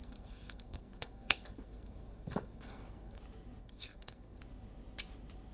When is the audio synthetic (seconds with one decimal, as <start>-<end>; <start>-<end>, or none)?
0.0-3.2; 3.6-4.4